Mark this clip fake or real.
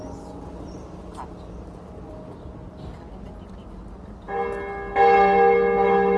real